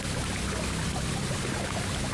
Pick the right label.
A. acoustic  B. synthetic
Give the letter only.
A